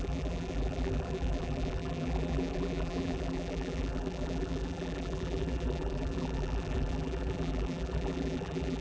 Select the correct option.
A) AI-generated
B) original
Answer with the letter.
A